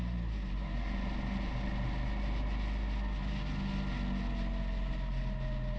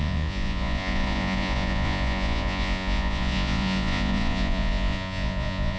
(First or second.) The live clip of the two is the first